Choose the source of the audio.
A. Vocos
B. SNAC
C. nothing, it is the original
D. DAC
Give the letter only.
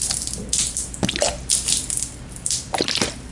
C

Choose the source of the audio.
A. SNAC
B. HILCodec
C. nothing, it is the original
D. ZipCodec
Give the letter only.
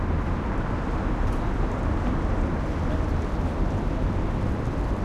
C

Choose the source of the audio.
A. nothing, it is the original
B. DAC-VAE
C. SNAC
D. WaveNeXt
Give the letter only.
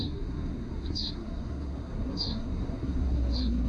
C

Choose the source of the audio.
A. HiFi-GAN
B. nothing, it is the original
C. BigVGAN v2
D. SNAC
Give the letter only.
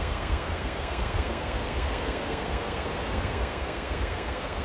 D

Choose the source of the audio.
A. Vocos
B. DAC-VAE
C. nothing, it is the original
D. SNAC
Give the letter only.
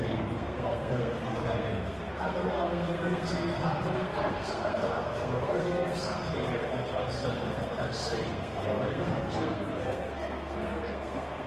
D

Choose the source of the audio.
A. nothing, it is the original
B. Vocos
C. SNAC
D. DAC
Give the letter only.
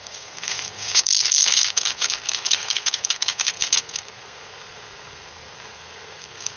C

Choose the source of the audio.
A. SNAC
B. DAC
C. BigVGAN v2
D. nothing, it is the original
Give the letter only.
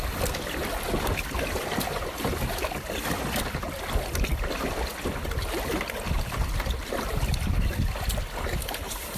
D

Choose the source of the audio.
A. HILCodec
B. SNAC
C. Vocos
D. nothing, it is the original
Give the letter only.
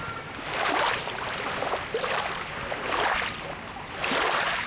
D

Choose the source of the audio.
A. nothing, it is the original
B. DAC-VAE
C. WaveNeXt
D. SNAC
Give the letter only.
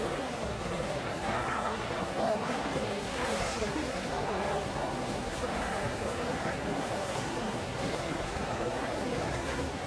D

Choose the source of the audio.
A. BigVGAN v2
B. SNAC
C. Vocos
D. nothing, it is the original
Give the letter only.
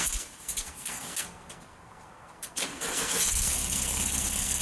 B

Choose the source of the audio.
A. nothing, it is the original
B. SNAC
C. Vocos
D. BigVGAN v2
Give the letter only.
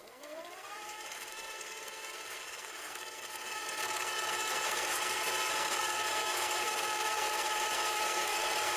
B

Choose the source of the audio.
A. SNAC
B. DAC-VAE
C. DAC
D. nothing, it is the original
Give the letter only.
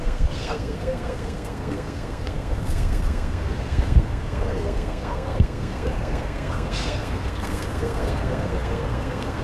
A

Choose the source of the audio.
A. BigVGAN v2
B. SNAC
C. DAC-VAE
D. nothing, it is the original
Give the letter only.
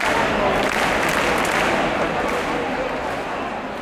D